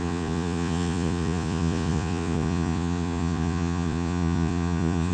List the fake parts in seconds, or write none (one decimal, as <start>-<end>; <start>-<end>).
0.0-5.1